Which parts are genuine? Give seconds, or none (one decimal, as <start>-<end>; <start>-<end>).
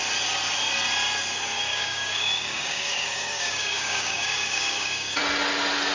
0.0-1.7; 5.2-5.9